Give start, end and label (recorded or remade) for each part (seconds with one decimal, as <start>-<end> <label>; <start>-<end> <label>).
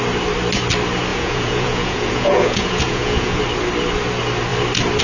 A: 0.0-1.1 recorded; 1.1-3.4 remade; 3.4-5.0 recorded